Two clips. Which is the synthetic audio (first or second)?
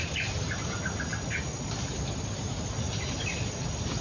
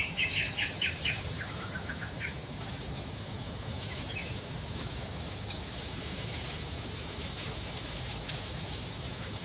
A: second